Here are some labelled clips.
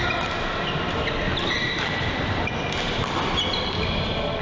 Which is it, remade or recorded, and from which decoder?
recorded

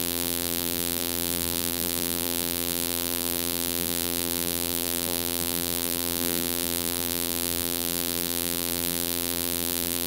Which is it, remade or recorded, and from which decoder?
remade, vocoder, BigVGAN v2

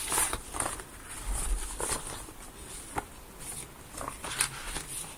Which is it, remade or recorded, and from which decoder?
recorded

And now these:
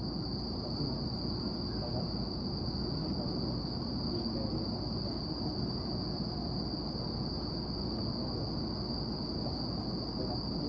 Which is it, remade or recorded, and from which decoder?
recorded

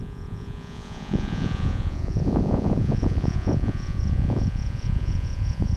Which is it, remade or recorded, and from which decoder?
remade, vocoder, Vocos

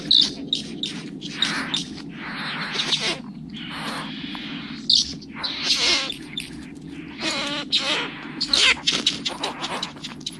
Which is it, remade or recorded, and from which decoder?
recorded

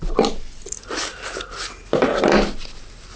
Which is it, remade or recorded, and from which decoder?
recorded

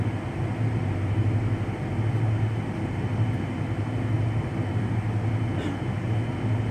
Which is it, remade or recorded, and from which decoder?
recorded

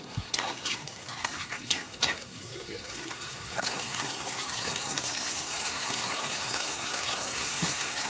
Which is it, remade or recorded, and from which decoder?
remade, codec, SNAC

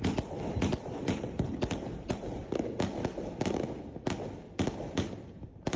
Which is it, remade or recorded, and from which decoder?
recorded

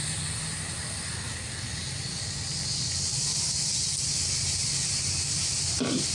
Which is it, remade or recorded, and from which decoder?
recorded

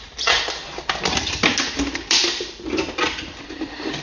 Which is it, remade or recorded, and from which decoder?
remade, vocoder, BigVGAN v2